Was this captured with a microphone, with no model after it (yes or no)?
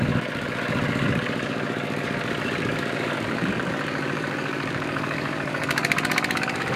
no